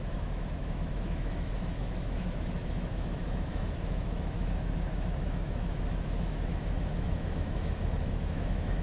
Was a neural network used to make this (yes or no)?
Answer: yes